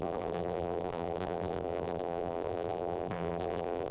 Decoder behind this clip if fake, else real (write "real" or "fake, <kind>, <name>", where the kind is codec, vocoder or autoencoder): fake, vocoder, BigVGAN v2